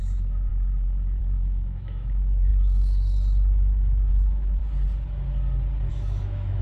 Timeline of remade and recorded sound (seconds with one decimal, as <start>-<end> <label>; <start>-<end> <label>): 0.0-0.5 remade; 0.5-1.2 recorded; 1.2-2.5 remade; 2.5-4.1 recorded; 4.1-4.6 remade; 4.6-5.9 recorded; 5.9-6.6 remade